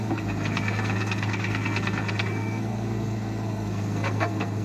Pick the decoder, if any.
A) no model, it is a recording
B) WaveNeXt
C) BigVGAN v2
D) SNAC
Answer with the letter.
D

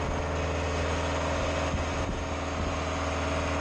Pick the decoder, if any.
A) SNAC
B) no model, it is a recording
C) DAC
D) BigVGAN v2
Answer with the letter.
B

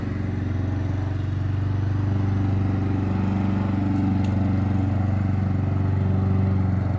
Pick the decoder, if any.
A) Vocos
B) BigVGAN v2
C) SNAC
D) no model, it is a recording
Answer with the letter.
D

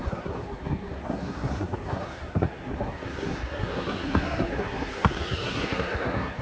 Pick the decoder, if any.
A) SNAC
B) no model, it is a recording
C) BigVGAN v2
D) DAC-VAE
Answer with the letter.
A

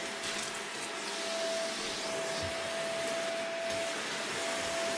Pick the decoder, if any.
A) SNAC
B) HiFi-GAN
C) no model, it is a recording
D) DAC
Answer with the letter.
C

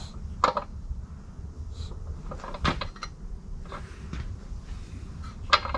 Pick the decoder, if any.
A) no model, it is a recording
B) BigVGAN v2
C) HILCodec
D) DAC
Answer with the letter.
A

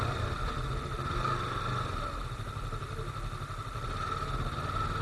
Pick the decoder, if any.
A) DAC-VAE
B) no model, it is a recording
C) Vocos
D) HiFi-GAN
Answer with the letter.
B